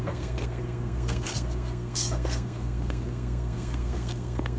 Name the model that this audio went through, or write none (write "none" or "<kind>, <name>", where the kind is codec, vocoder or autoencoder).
codec, SNAC